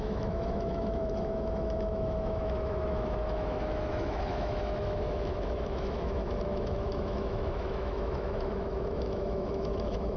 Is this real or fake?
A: fake